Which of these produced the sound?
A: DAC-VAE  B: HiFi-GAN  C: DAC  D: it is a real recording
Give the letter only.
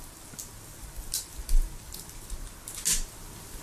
D